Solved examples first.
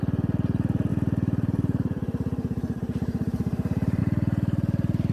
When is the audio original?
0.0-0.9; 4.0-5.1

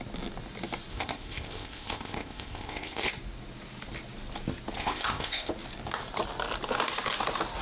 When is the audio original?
0.0-0.9; 3.1-4.8; 5.5-7.6

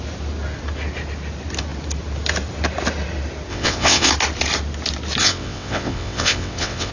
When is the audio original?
0.0-3.5; 4.1-5.2

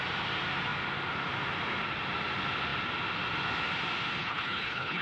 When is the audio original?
0.0-4.2